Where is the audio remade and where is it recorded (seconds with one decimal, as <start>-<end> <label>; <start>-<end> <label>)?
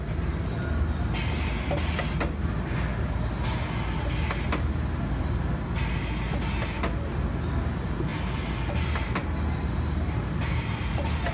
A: 0.0-11.3 recorded